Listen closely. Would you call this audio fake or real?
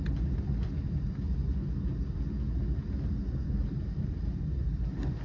real